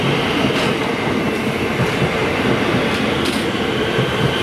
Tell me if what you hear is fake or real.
real